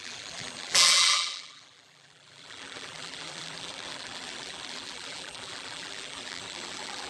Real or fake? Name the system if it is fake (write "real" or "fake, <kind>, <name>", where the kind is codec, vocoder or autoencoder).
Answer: fake, vocoder, BigVGAN v2